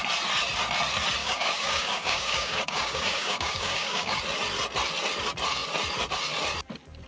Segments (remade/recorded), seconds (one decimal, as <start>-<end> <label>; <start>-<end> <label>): 0.0-1.2 recorded; 1.2-4.2 remade; 4.2-7.1 recorded